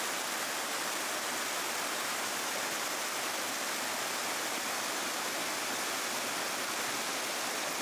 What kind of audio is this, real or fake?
real